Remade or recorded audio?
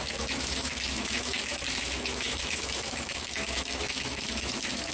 remade